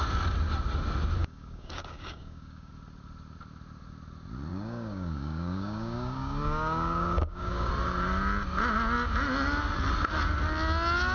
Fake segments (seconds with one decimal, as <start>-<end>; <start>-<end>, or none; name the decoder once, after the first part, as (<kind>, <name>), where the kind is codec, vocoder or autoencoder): 1.2-2.7 (codec, DAC); 4.5-7.7